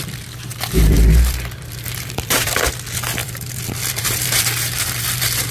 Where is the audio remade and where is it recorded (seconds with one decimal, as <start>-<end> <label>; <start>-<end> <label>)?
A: 0.0-0.5 recorded; 0.5-2.7 remade; 2.7-3.2 recorded; 3.2-5.5 remade